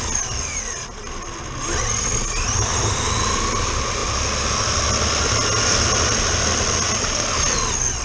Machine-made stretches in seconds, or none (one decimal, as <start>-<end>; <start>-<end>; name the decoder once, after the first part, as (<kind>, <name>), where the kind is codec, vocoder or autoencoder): none